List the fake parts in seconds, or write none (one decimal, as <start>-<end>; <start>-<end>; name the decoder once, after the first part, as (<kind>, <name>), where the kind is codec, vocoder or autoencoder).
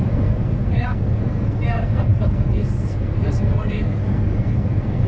0.0-5.1 (codec, SNAC)